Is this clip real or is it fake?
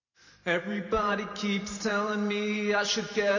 fake